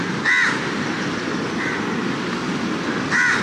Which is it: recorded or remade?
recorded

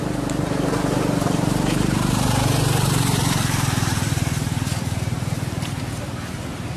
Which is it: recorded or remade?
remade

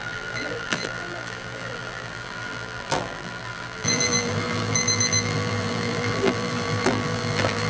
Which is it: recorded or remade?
remade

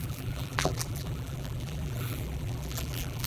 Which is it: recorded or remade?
remade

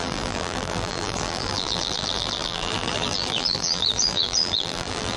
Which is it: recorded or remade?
remade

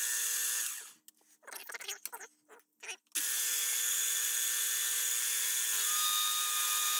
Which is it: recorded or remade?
recorded